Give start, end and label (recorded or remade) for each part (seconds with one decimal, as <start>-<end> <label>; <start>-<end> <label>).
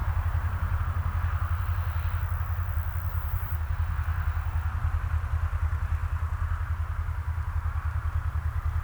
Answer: 0.0-0.8 remade; 0.8-3.1 recorded; 3.1-3.6 remade; 3.6-8.8 recorded